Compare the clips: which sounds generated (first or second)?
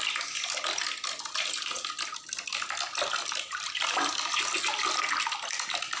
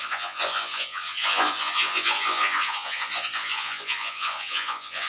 second